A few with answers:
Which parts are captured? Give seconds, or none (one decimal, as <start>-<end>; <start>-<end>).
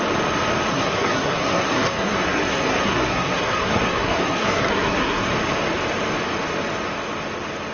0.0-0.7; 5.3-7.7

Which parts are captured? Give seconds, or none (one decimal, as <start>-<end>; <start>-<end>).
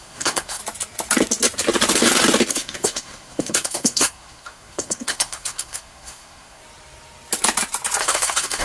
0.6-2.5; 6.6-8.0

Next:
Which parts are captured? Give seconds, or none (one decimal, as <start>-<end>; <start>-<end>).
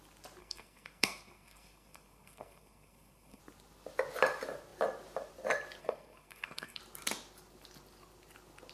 0.0-0.4; 3.4-5.8; 6.8-8.7